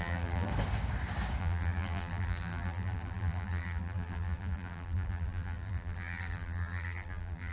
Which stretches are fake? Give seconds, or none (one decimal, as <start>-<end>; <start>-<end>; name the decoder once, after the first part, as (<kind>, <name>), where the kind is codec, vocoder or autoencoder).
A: 0.0-0.5 (vocoder, BigVGAN v2); 1.4-7.5